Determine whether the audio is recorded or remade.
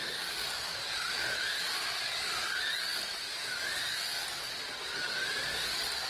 recorded